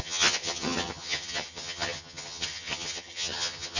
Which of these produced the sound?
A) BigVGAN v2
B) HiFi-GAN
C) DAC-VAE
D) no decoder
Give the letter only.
B